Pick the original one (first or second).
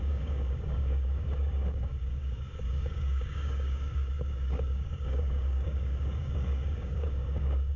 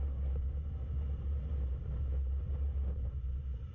second